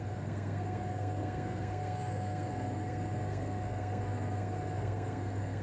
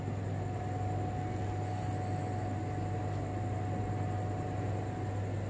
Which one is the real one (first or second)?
second